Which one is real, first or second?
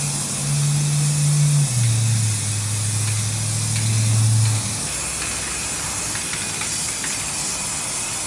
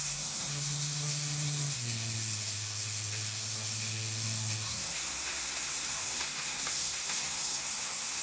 first